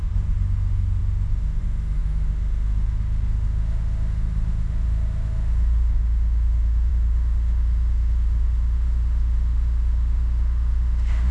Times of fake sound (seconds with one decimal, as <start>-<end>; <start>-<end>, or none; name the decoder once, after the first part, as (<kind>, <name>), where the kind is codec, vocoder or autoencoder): 0.0-11.3 (autoencoder, DAC-VAE)